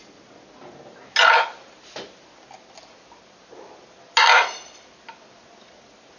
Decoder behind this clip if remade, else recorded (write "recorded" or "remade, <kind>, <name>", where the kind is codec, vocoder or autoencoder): recorded